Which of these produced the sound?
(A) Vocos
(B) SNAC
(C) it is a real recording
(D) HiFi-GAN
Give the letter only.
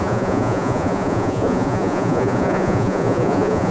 A